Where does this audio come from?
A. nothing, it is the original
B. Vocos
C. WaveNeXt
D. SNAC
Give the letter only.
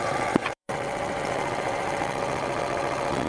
C